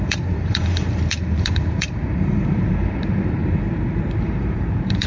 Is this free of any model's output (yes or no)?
no